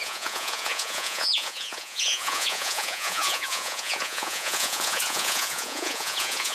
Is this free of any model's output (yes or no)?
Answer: no